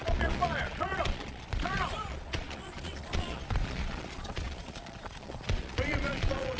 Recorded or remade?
remade